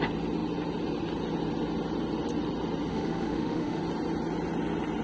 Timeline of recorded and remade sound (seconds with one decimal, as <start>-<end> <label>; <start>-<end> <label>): 0.0-2.9 recorded; 2.9-3.8 remade; 3.8-5.0 recorded